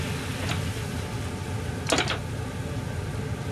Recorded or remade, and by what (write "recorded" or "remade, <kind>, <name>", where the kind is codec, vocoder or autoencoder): recorded